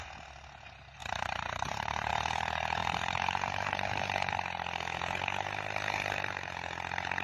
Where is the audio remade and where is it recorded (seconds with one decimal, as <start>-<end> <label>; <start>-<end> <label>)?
0.0-1.0 recorded; 1.0-2.1 remade; 2.1-2.8 recorded; 2.8-4.3 remade; 4.3-7.2 recorded